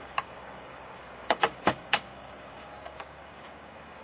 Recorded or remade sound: remade